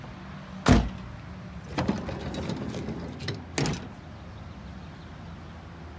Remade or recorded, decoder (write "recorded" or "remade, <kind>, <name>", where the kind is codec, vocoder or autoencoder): recorded